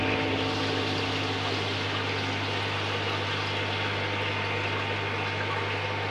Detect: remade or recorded recorded